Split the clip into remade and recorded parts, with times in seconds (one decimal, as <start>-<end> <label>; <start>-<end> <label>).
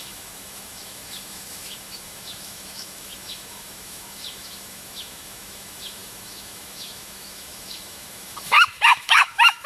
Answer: 0.0-9.7 remade